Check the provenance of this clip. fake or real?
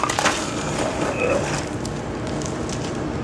real